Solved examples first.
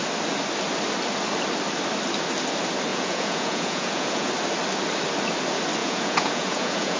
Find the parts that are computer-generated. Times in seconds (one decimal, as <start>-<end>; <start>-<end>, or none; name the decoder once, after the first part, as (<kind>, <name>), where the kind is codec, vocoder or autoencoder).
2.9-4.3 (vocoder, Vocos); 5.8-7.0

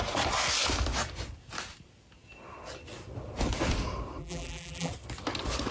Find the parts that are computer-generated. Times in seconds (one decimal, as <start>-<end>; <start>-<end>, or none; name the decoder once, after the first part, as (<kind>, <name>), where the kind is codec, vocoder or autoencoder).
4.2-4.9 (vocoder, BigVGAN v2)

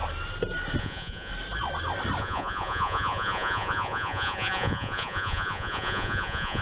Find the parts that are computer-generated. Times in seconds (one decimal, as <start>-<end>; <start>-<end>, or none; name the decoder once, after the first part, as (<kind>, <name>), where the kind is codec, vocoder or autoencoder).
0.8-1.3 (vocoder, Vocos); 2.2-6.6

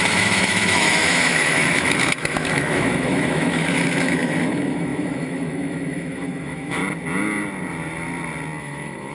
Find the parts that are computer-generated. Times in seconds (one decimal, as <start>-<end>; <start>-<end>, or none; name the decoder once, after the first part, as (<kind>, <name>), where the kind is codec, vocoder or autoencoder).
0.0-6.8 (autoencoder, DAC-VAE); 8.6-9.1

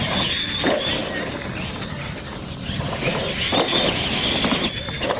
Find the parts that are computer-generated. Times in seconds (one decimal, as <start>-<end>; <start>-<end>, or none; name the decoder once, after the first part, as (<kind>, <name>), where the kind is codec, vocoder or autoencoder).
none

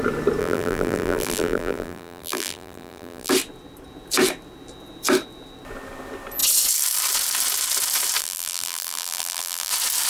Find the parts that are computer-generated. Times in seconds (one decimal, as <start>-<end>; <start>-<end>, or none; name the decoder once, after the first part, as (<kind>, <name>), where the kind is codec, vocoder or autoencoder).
0.4-3.3 (vocoder, BigVGAN v2); 8.2-9.7